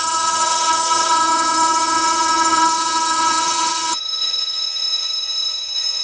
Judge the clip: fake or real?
fake